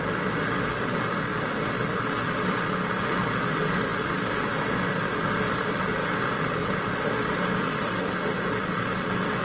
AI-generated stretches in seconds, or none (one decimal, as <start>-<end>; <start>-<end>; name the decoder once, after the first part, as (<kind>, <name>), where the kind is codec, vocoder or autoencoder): 6.0-8.0 (vocoder, BigVGAN v2)